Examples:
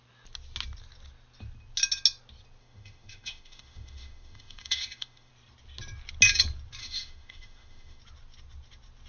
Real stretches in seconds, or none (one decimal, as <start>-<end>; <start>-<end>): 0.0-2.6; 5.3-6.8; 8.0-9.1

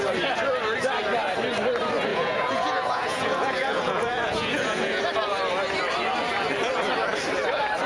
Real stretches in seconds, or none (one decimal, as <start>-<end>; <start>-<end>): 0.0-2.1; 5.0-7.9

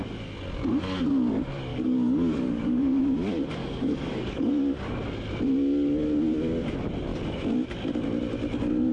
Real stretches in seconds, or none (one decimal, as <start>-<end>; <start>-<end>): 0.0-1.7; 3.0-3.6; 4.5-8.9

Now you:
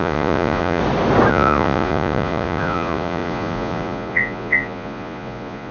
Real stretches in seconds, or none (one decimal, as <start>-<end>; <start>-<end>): 0.8-1.3